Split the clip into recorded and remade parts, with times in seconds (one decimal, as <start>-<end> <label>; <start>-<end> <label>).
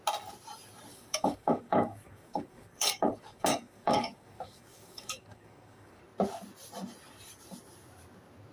0.0-0.9 recorded; 0.9-6.0 remade; 6.0-8.5 recorded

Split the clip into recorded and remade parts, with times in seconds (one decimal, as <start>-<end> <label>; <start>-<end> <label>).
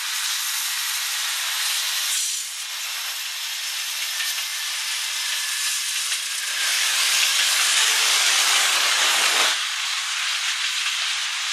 0.0-6.7 recorded; 6.7-10.0 remade; 10.0-11.5 recorded